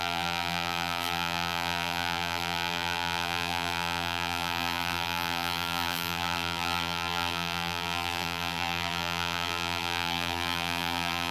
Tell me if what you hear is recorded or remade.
remade